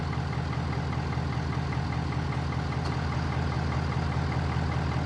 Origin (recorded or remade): recorded